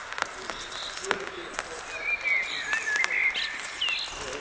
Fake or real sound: real